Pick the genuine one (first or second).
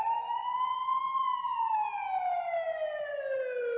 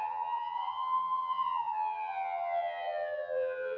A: first